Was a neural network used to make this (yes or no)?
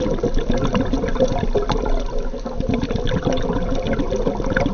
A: no